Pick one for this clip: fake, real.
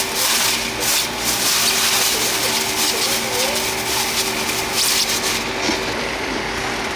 real